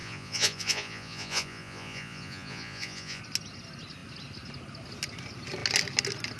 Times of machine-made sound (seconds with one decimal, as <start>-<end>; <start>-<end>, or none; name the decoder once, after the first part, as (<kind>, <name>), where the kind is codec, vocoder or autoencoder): 0.0-3.2 (vocoder, Vocos)